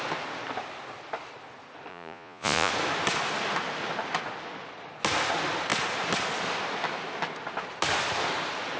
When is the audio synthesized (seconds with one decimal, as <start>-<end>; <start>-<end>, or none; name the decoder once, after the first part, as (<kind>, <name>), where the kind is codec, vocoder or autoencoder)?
1.9-2.7 (vocoder, Vocos)